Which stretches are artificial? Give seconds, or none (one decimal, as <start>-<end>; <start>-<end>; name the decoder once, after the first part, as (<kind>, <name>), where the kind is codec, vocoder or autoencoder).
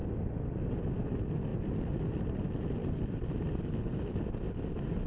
none